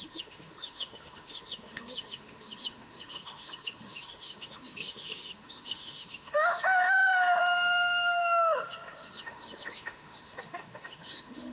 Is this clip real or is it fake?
fake